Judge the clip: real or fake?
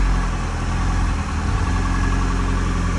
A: real